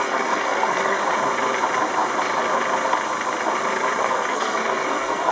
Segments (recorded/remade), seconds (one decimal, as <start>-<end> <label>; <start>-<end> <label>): 0.0-1.0 remade; 1.0-4.0 recorded; 4.0-5.3 remade